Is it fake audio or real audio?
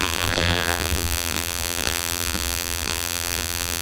fake